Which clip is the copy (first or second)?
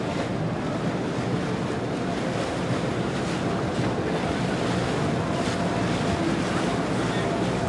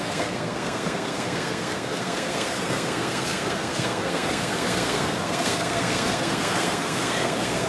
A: second